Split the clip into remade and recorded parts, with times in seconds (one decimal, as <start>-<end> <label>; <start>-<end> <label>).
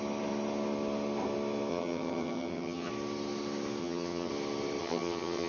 0.0-1.7 recorded; 1.7-2.9 remade; 2.9-3.8 recorded; 3.8-4.3 remade; 4.3-4.8 recorded; 4.8-5.5 remade